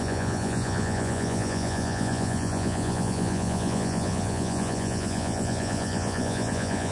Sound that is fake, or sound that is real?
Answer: fake